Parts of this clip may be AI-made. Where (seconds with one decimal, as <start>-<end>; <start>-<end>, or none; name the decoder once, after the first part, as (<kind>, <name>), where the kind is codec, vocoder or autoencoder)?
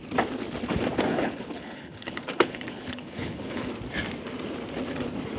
1.1-3.7 (codec, HILCodec)